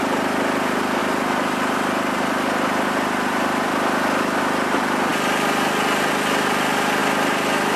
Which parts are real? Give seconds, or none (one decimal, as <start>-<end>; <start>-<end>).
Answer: 0.0-1.0; 4.4-7.8